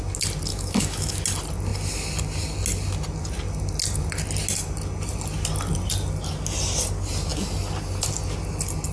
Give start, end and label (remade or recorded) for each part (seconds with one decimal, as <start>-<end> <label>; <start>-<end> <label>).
0.0-0.5 recorded; 0.5-1.2 remade; 1.2-8.9 recorded